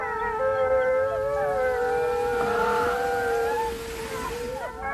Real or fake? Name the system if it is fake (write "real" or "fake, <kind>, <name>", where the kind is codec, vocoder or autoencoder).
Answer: real